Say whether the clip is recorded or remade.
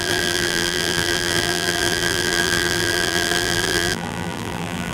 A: remade